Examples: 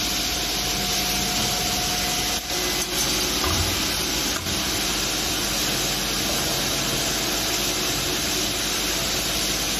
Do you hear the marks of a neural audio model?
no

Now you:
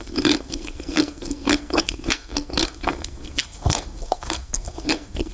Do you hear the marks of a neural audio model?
yes